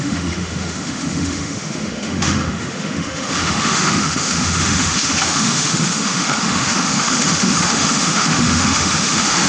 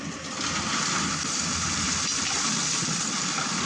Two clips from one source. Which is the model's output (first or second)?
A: first